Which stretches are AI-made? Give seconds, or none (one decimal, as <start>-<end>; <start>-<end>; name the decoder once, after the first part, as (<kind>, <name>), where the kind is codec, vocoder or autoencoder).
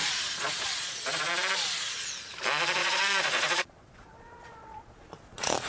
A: 0.0-1.3 (vocoder, Vocos); 2.8-5.7